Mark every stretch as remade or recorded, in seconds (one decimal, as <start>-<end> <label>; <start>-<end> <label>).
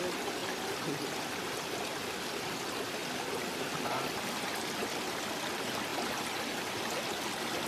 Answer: 0.0-7.7 recorded